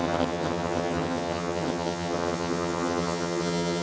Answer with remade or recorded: remade